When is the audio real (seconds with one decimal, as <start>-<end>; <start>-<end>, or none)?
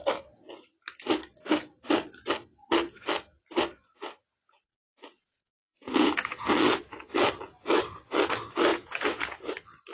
0.0-4.7; 6.5-8.7; 9.4-9.9